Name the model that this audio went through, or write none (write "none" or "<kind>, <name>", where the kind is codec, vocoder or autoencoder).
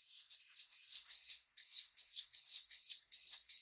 codec, SNAC